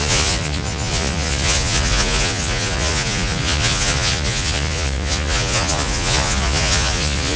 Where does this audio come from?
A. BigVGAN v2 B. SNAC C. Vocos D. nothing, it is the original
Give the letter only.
C